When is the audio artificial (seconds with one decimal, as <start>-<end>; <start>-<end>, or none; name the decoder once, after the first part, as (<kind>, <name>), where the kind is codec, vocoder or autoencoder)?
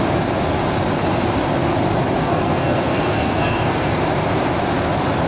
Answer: 2.2-4.0 (codec, SNAC)